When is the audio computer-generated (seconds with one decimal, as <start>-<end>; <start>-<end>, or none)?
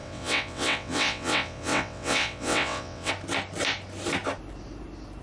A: 0.0-3.1